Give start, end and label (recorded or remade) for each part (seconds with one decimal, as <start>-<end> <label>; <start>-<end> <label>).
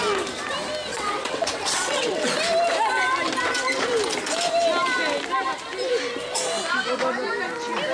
0.0-0.9 recorded; 0.9-2.3 remade; 2.3-7.9 recorded